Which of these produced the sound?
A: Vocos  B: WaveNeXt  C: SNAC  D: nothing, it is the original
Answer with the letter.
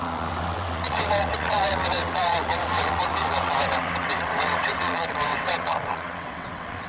B